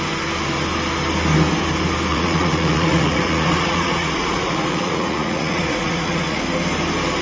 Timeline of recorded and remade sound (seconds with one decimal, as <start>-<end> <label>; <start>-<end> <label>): 0.0-2.1 recorded; 2.1-6.4 remade; 6.4-7.2 recorded